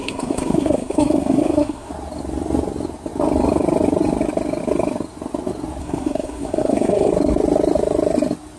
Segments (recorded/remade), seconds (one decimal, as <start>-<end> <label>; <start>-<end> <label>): 0.0-1.9 remade; 1.9-5.8 recorded; 5.8-7.1 remade; 7.1-8.6 recorded